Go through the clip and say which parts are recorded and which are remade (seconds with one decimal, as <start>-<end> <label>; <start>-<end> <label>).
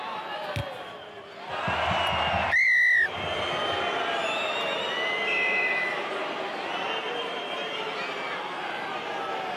0.0-9.6 recorded